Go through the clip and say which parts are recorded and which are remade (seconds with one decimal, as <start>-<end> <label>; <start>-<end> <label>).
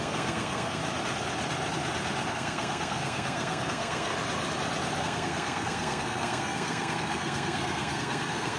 0.0-0.8 remade; 0.8-2.3 recorded; 2.3-4.1 remade; 4.1-5.0 recorded; 5.0-8.6 remade